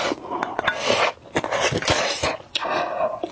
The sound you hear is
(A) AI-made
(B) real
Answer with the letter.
B